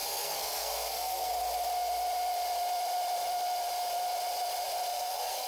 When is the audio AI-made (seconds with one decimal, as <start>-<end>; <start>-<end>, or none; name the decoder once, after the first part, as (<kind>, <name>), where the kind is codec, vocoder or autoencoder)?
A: 0.0-1.3 (codec, SNAC); 4.9-5.5